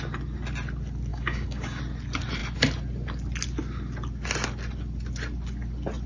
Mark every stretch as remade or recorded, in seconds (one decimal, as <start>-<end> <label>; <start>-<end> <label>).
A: 0.0-1.1 recorded; 1.1-1.8 remade; 1.8-6.1 recorded